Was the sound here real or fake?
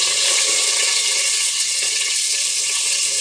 fake